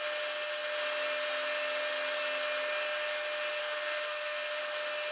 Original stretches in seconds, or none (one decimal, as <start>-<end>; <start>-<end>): 0.0-3.6; 4.6-5.1